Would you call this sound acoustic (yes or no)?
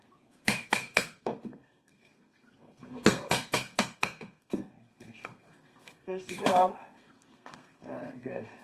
no